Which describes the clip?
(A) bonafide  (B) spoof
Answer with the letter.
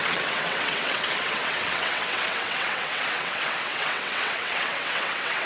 B